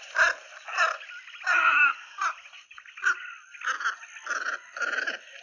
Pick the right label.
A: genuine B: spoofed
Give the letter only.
A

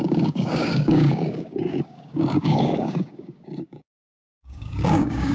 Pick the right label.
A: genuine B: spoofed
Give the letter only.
B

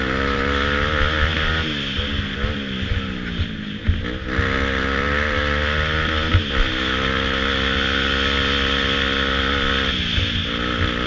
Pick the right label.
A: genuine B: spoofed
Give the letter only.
A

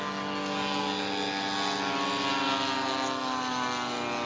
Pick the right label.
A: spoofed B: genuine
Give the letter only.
B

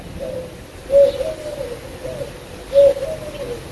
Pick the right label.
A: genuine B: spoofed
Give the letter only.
A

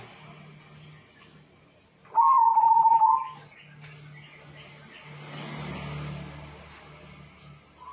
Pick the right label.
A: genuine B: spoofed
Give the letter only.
A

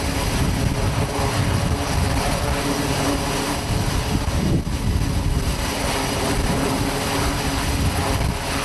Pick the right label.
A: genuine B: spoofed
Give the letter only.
A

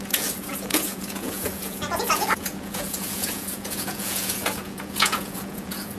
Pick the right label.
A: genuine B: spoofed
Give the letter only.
B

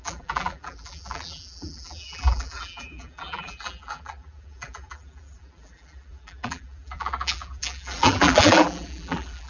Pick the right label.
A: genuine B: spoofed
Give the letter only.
B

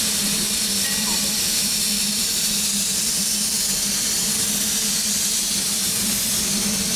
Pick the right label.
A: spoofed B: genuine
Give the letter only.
A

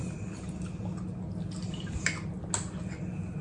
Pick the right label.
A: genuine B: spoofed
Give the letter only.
A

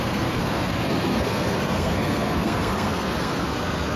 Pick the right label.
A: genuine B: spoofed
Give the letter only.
B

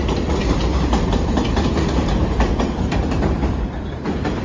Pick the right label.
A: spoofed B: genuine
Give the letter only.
A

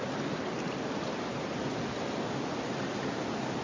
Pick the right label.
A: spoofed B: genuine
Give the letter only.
B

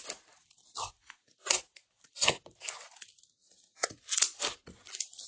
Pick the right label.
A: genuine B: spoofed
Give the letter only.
A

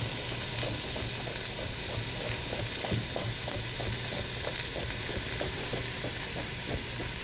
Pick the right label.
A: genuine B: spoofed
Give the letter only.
A